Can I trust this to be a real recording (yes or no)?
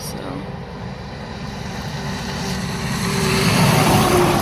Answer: no